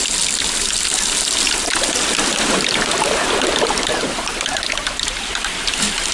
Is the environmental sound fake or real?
real